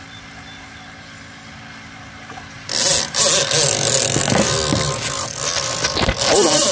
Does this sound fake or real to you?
real